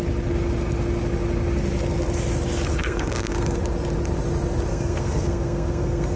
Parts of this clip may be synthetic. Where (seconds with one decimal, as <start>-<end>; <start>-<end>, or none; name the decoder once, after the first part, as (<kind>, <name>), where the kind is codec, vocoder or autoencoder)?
2.7-3.6 (codec, SNAC); 4.7-6.2